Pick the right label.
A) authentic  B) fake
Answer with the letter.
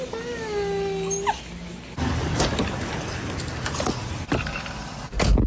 A